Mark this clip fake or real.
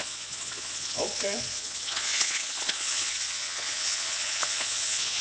fake